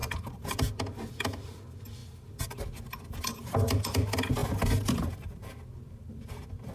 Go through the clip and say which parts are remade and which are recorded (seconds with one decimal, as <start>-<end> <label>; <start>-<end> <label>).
0.0-6.7 recorded